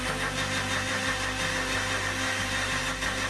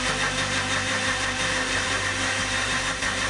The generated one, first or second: second